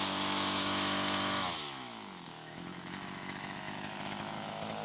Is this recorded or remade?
remade